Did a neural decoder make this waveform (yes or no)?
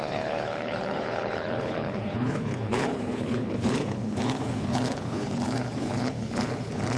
yes